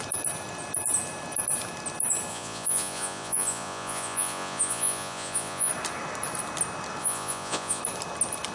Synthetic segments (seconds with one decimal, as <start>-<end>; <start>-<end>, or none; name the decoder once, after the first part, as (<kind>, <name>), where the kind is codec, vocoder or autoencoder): 2.3-5.7 (vocoder, Vocos); 7.0-7.8